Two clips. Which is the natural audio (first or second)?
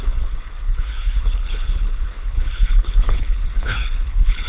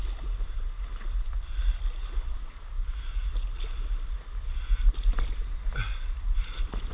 second